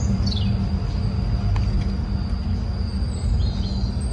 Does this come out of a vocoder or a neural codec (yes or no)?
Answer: no